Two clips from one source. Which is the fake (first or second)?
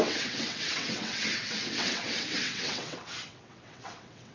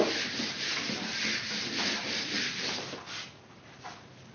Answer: first